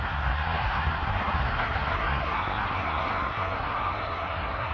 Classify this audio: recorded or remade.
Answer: remade